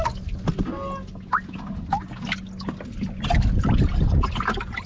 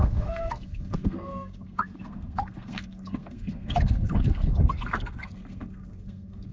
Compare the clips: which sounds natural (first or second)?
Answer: first